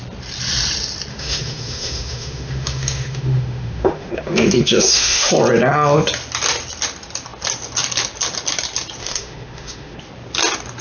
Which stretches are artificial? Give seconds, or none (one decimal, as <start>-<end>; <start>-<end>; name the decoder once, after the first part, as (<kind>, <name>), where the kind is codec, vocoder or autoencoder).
1.1-5.3 (autoencoder, DAC-VAE); 9.0-10.0